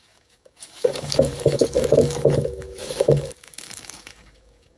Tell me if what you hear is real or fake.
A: fake